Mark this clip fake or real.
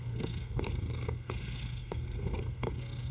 fake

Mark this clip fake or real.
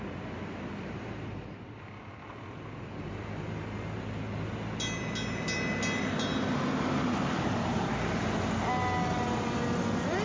real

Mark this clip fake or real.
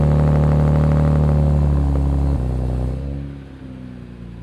real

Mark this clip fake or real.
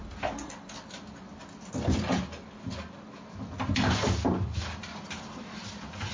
real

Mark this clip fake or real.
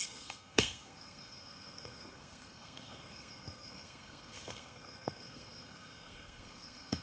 fake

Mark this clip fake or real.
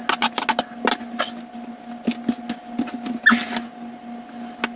real